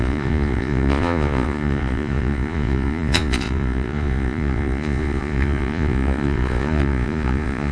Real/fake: fake